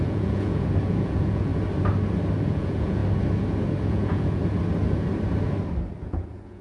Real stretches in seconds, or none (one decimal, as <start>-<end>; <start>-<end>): 1.5-2.4; 3.0-3.9; 4.4-6.0